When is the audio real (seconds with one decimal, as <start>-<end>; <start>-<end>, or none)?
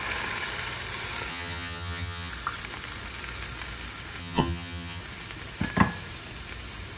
0.0-1.3; 2.3-4.2; 5.0-7.0